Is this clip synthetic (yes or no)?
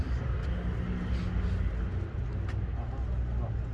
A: no